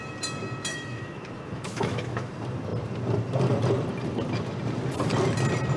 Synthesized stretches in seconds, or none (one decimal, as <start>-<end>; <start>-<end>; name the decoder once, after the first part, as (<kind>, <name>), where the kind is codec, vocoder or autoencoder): 0.7-2.3 (autoencoder, DAC-VAE)